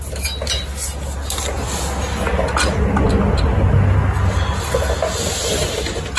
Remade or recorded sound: recorded